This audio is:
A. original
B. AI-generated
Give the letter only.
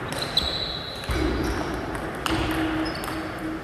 A